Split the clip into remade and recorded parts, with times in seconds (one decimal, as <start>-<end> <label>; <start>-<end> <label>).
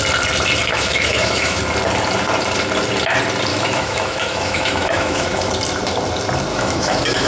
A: 0.0-0.7 recorded; 0.7-1.6 remade; 1.6-3.5 recorded; 3.5-5.5 remade; 5.5-6.5 recorded; 6.5-7.3 remade